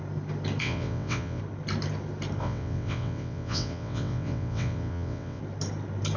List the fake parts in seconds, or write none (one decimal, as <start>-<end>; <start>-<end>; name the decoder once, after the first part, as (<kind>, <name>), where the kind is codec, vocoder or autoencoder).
0.6-1.4 (vocoder, WaveNeXt); 2.4-5.4